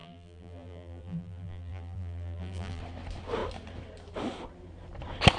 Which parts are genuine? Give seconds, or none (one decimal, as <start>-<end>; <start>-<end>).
2.8-5.4